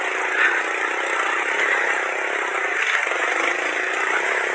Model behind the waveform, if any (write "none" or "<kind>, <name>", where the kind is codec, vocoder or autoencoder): vocoder, BigVGAN v2